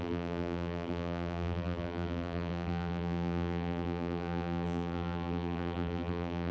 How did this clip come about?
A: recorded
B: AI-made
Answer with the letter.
B